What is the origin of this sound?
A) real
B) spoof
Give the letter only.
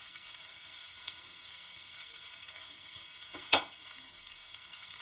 B